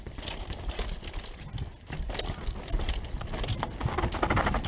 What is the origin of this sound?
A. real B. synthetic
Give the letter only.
A